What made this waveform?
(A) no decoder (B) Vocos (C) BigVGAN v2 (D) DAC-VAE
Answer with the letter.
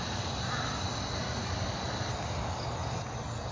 A